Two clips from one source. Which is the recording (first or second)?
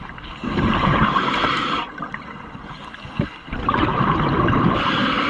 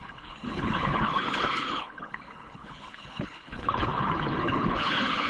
first